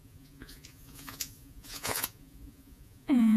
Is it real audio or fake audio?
fake